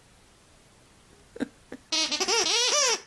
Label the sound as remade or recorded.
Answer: recorded